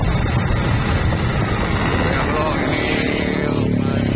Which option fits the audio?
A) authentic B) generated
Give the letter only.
A